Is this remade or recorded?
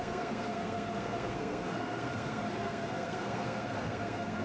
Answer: remade